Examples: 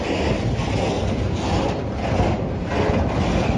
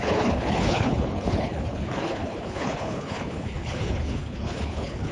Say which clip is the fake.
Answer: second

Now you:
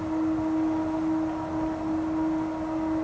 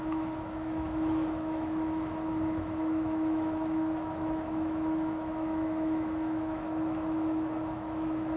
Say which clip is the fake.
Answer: second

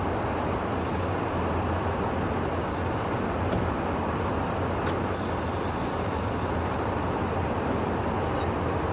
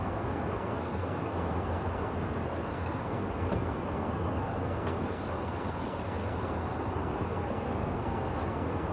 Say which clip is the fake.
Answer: second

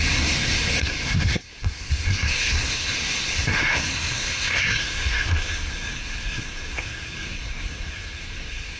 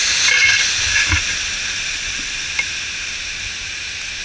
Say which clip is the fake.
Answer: first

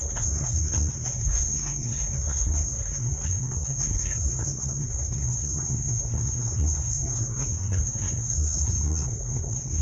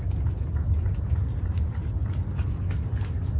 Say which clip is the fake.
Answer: first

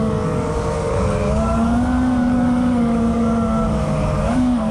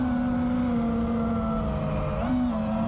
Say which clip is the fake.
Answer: first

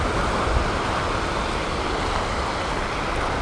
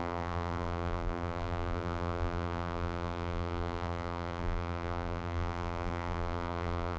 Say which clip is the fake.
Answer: second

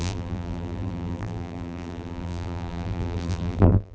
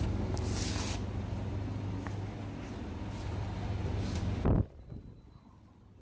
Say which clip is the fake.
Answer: first